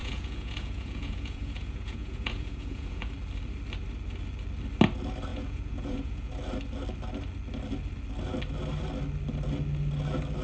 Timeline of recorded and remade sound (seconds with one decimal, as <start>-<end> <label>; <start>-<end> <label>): 0.0-3.1 remade; 3.1-5.3 recorded; 5.3-6.3 remade; 6.3-10.4 recorded